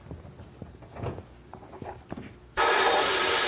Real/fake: real